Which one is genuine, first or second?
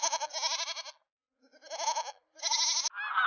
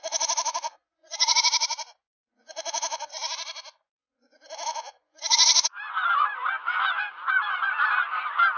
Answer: first